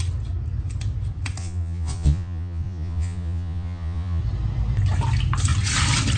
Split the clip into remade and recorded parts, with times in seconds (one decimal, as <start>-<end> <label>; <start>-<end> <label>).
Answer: 0.0-1.4 recorded; 1.4-4.2 remade; 4.2-6.2 recorded